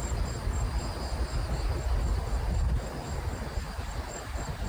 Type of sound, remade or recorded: recorded